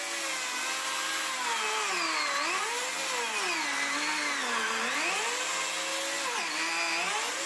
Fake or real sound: real